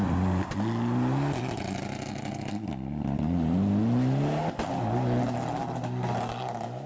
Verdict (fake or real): real